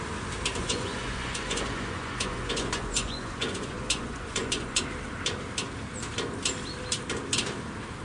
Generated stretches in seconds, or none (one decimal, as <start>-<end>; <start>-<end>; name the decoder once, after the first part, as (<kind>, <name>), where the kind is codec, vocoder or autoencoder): 0.6-4.8 (vocoder, Vocos)